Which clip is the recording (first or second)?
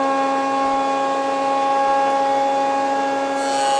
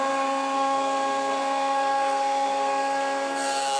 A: first